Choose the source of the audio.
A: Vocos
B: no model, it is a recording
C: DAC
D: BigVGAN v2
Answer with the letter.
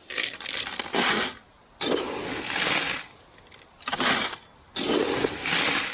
B